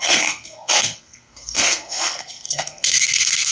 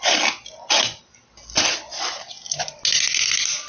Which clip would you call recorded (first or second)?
second